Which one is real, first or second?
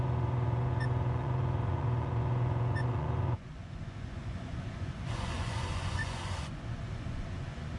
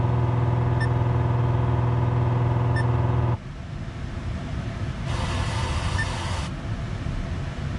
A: second